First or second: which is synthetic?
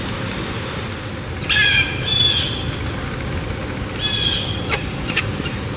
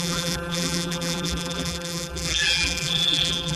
second